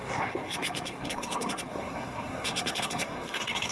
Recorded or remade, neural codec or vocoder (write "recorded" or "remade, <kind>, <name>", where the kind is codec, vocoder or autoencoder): remade, codec, SNAC